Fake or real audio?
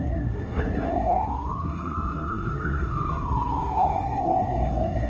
fake